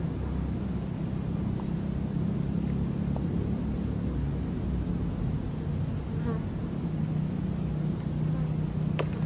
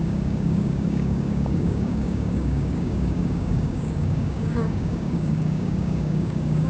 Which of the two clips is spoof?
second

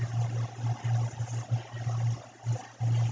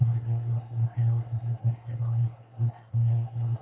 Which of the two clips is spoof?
second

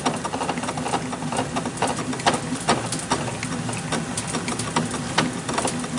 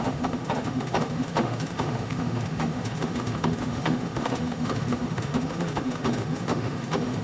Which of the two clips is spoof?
second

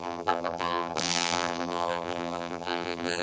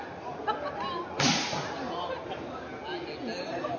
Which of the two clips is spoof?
first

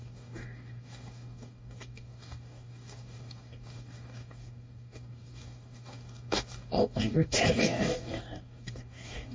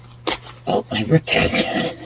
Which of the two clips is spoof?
first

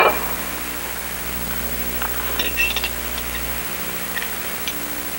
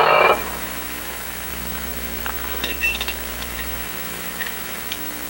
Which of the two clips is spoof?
second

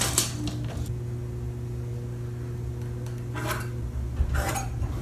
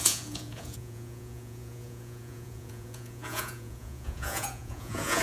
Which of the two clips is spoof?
second